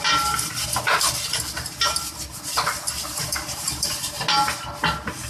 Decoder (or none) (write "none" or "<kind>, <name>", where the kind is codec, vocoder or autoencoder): none